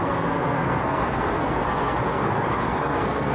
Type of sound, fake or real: fake